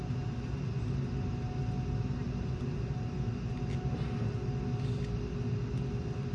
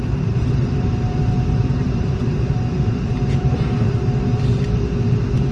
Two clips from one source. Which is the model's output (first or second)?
second